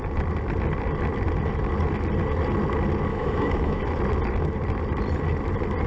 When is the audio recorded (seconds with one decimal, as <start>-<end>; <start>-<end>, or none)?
0.0-3.1; 3.8-5.9